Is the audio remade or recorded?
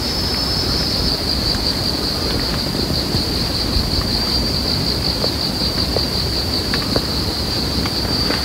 recorded